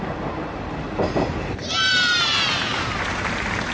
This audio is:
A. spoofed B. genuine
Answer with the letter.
A